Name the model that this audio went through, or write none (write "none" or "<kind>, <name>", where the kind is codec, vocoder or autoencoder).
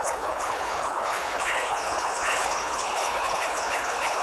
codec, HILCodec